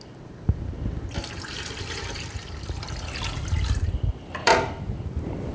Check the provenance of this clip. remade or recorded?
remade